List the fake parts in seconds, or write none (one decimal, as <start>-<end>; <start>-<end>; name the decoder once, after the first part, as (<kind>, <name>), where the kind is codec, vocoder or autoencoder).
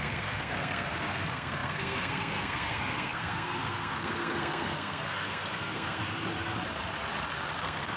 0.0-6.0 (codec, SNAC); 7.6-8.0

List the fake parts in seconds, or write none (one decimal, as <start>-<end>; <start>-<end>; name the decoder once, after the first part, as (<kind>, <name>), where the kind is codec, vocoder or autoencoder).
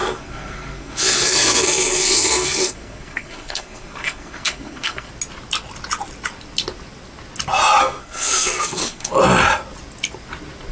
0.0-5.1 (codec, SNAC); 7.8-9.1